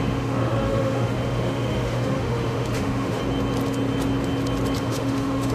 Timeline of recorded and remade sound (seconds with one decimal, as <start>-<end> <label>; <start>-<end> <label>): 0.0-3.2 remade; 3.2-4.8 recorded; 4.8-5.5 remade